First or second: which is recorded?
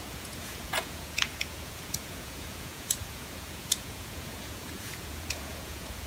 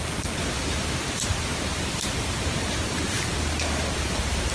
second